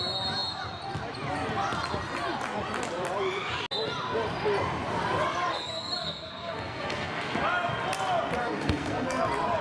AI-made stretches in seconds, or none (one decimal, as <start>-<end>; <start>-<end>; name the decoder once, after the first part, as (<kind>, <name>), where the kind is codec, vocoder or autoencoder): 5.5-7.4 (codec, SNAC); 8.4-9.2